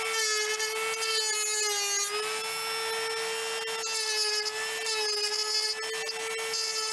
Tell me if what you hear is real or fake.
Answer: real